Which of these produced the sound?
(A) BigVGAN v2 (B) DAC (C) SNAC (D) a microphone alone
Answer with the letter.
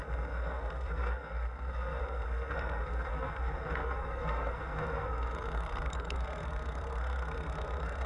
C